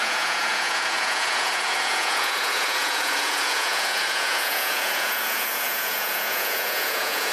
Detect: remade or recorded remade